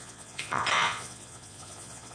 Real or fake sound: fake